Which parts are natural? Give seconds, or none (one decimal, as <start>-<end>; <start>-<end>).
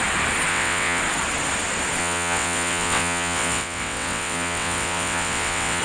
0.0-0.5; 1.0-2.0